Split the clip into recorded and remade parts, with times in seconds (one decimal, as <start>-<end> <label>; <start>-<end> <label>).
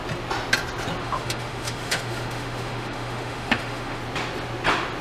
0.0-1.0 recorded; 1.0-4.0 remade; 4.0-5.0 recorded